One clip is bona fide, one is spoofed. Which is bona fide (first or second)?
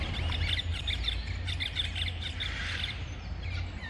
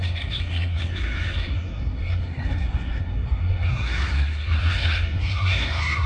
first